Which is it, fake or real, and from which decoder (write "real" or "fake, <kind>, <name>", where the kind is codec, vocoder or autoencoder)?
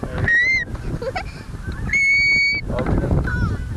real